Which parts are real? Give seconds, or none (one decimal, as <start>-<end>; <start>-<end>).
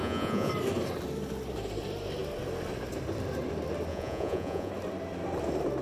0.5-3.9; 4.7-5.8